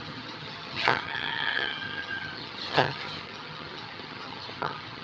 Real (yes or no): no